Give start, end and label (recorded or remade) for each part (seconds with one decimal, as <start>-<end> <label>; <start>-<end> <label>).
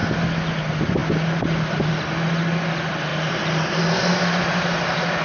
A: 0.0-3.1 recorded; 3.1-4.7 remade; 4.7-5.2 recorded